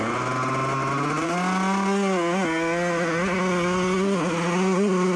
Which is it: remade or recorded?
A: recorded